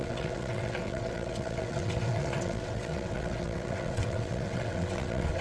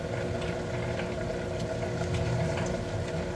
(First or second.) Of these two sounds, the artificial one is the first